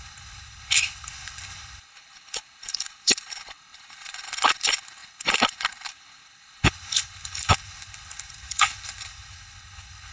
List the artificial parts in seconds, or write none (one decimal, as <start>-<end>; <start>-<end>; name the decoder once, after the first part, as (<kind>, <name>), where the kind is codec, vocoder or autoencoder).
0.0-10.1 (codec, HILCodec)